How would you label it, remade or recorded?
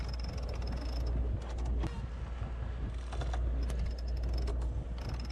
recorded